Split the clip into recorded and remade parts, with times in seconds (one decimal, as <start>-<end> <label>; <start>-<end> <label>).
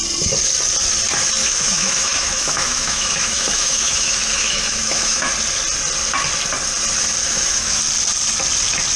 0.0-1.4 recorded; 1.4-5.3 remade; 5.3-7.2 recorded; 7.2-7.8 remade; 7.8-9.0 recorded